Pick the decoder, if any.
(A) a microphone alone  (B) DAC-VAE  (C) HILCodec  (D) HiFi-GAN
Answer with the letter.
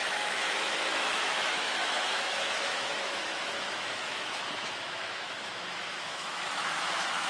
B